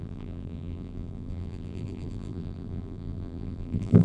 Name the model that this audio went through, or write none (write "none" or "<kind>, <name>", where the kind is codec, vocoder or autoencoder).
vocoder, BigVGAN v2